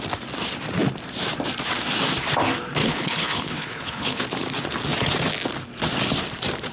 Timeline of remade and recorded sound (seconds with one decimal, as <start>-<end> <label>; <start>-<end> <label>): 0.0-2.8 recorded; 2.8-4.2 remade; 4.2-6.7 recorded